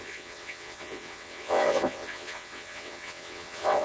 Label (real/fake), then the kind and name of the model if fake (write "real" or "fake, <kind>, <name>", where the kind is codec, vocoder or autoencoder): fake, vocoder, WaveNeXt